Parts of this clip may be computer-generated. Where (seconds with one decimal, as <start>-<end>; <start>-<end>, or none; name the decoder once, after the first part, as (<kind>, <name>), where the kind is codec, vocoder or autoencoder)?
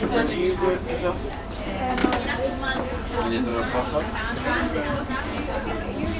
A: 0.4-1.1 (codec, DAC)